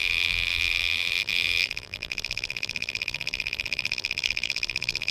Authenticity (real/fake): fake